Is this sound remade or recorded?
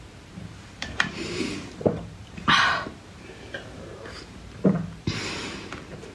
remade